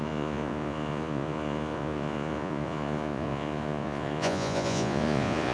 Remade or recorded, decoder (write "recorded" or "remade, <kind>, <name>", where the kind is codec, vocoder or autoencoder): remade, vocoder, Vocos